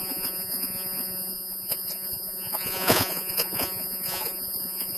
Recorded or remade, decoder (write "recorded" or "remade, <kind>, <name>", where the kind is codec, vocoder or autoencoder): remade, vocoder, Vocos